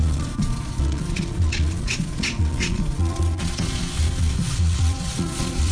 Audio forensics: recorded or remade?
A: remade